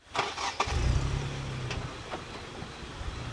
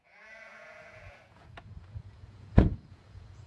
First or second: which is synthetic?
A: second